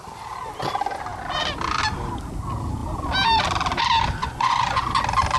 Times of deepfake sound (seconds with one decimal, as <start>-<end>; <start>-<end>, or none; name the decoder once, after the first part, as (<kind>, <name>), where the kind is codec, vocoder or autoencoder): 4.2-5.0 (vocoder, Vocos)